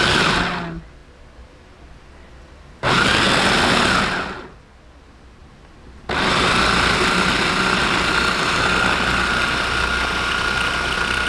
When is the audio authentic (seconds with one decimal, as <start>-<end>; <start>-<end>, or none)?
0.0-11.3